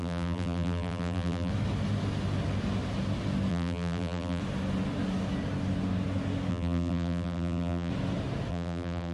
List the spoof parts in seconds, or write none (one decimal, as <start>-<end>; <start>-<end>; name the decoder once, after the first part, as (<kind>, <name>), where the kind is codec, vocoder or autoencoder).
0.0-1.5 (vocoder, BigVGAN v2); 3.5-4.4; 6.5-7.9; 8.5-9.1